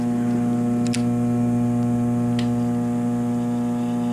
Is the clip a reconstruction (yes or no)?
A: no